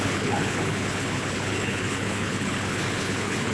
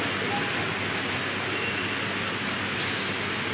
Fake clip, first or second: first